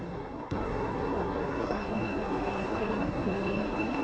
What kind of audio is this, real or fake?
fake